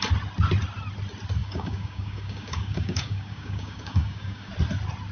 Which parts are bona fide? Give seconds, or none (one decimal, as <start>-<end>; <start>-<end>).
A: 0.0-1.4; 4.5-5.1